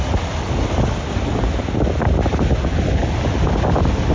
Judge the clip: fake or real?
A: real